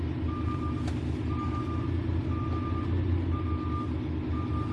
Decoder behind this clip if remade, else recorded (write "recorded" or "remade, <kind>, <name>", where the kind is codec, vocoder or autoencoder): recorded